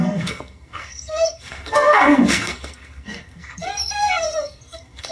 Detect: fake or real fake